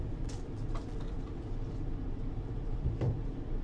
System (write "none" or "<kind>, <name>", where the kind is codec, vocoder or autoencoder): vocoder, BigVGAN v2